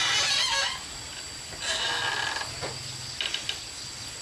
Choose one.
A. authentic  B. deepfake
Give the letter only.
A